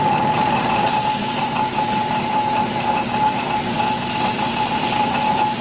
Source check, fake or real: fake